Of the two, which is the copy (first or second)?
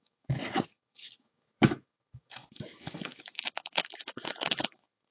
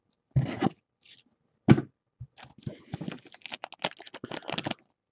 first